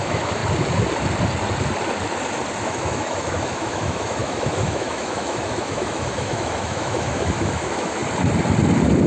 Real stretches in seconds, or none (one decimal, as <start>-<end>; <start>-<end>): 0.4-2.6; 8.0-9.1